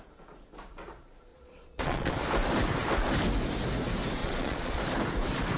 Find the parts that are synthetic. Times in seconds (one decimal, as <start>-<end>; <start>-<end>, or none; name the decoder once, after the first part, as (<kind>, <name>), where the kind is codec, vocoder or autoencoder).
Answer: 1.3-2.1 (vocoder, Vocos); 4.2-4.8